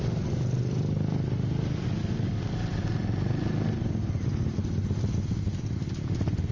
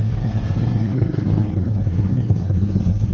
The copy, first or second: second